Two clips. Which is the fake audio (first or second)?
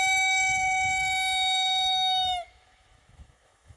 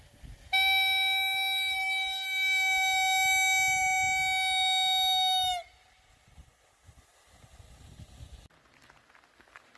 first